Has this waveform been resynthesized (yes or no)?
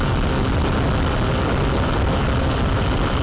no